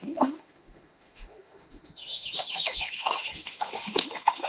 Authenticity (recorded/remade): remade